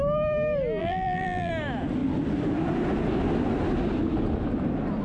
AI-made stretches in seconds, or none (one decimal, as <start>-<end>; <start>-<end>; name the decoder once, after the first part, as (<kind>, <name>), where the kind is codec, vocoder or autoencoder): 0.8-1.5 (vocoder, BigVGAN v2)